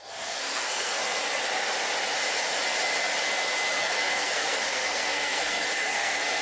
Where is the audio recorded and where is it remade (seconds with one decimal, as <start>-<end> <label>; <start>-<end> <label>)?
0.0-1.0 remade; 1.0-3.8 recorded; 3.8-6.4 remade